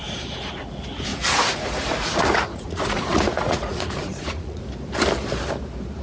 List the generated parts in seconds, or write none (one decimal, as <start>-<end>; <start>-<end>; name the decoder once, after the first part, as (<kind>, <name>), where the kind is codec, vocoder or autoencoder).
1.1-4.6 (vocoder, Vocos)